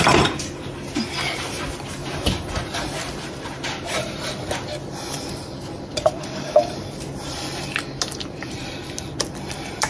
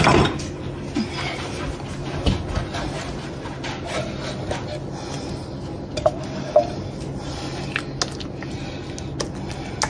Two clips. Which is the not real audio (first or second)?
first